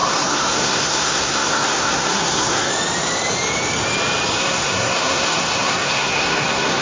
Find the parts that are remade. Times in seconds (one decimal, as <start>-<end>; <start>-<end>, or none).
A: 0.0-2.7; 4.4-6.8